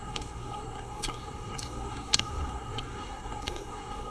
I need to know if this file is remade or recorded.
remade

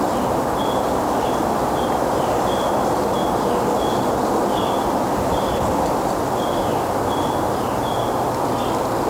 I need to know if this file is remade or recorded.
recorded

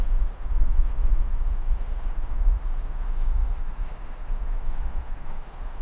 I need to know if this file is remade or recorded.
remade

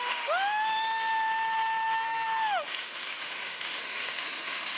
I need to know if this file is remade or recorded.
remade